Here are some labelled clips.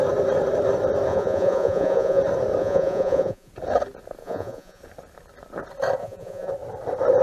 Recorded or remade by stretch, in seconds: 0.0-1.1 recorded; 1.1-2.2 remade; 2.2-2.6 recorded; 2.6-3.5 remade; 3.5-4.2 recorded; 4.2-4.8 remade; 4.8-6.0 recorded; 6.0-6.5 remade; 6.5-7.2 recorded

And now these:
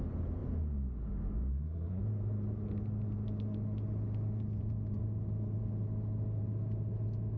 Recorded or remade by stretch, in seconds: 0.0-1.5 recorded; 1.5-2.0 remade; 2.0-7.4 recorded

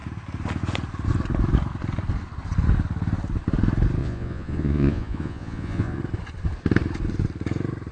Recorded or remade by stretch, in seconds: 0.0-4.0 recorded; 4.0-6.0 remade; 6.0-7.9 recorded

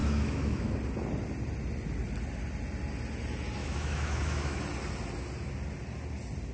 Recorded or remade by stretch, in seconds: 0.0-0.7 remade; 0.7-3.6 recorded; 3.6-4.6 remade; 4.6-6.5 recorded

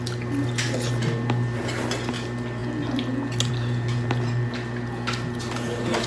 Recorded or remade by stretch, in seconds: 0.0-6.1 recorded

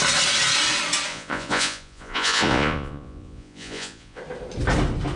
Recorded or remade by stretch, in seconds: 0.0-1.1 recorded; 1.1-4.2 remade; 4.2-5.2 recorded